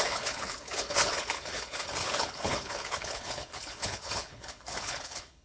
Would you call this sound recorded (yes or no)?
no